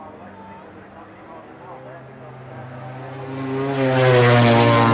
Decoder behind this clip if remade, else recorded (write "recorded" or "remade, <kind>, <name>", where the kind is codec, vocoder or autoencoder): recorded